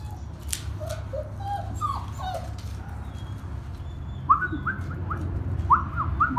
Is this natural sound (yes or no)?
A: yes